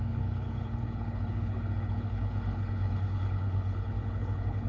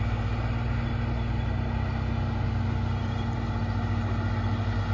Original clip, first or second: second